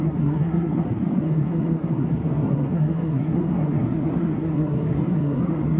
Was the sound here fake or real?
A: fake